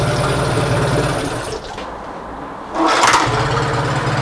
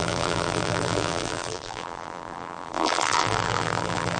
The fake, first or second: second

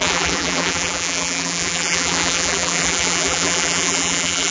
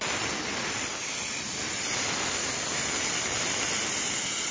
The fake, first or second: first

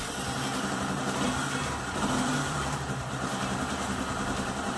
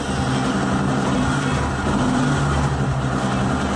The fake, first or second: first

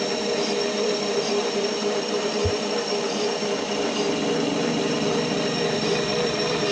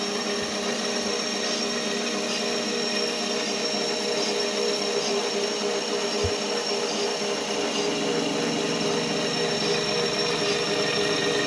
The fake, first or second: first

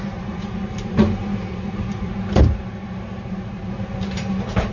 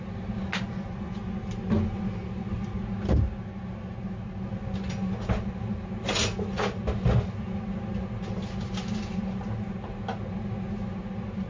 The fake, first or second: first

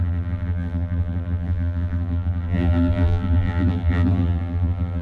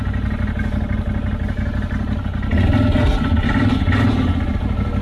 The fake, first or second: first